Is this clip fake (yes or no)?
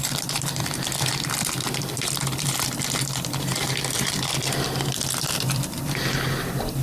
yes